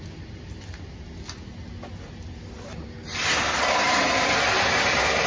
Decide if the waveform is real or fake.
real